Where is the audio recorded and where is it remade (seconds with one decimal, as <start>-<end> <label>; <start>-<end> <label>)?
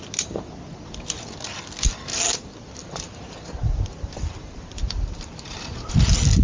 0.0-2.1 recorded; 2.1-5.9 remade; 5.9-6.4 recorded